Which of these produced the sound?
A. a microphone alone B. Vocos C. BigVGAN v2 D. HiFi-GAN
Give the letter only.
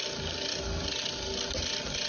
A